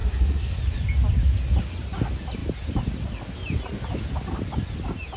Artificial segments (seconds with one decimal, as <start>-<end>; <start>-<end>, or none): 0.0-0.6